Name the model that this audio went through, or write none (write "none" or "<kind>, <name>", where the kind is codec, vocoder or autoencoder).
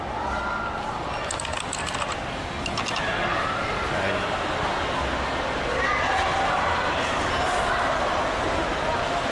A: none